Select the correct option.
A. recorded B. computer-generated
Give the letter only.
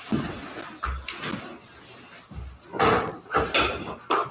A